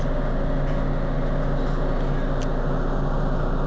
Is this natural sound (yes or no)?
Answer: yes